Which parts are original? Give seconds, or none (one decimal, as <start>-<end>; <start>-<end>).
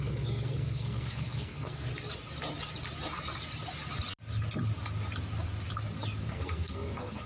1.9-6.3